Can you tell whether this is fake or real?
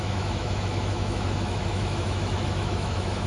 fake